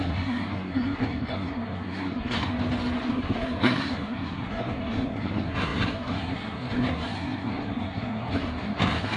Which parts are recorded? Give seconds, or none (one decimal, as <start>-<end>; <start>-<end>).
2.5-3.1